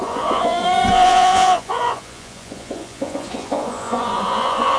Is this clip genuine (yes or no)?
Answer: no